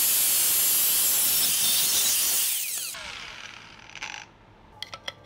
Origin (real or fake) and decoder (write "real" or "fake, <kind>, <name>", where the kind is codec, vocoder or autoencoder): real